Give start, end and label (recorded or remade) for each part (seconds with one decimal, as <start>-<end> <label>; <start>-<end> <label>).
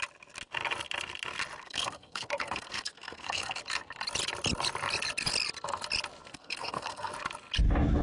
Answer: 0.0-1.6 recorded; 1.6-3.6 remade; 3.6-6.3 recorded; 6.3-7.1 remade; 7.1-8.0 recorded